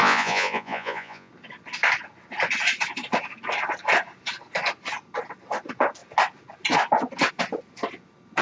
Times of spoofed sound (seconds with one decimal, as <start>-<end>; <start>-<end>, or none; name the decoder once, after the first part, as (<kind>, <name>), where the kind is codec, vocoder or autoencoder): 0.0-1.3 (vocoder, Vocos)